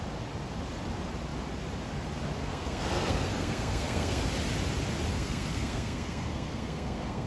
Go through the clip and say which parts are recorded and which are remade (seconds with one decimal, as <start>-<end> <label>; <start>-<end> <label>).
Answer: 0.0-2.4 recorded; 2.4-4.3 remade; 4.3-5.1 recorded; 5.1-7.3 remade